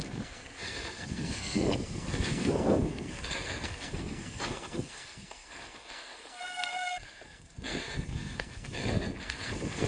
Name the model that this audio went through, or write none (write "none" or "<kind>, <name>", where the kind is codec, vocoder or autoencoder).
codec, SNAC